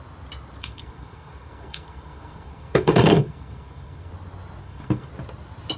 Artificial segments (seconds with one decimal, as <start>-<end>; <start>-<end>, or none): 0.6-4.1; 4.6-5.1